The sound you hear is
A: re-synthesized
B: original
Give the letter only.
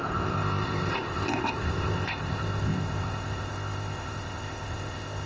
A